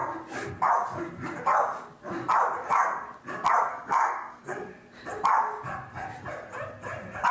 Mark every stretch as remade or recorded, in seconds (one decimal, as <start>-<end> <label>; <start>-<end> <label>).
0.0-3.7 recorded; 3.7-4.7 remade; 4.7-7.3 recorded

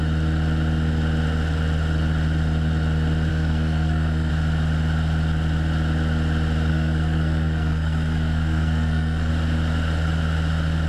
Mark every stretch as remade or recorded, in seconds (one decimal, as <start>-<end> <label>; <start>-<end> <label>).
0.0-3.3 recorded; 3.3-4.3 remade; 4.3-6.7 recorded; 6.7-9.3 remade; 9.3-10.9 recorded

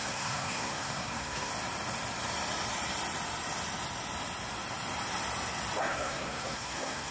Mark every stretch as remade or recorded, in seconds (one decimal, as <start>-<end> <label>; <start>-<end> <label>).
0.0-1.5 remade; 1.5-5.8 recorded; 5.8-7.1 remade